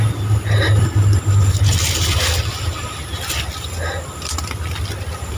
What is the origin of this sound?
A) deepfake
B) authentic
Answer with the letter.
A